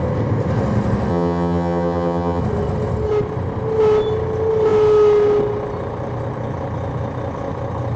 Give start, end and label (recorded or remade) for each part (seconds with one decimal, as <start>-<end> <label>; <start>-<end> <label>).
0.0-1.1 recorded; 1.1-2.4 remade; 2.4-8.0 recorded